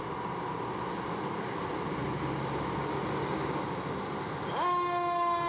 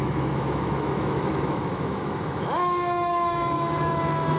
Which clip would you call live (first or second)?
first